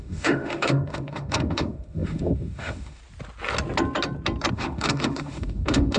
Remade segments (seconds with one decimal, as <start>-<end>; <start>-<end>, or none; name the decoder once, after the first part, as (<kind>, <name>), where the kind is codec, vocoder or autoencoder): 0.0-3.0 (autoencoder, DAC-VAE); 4.5-6.0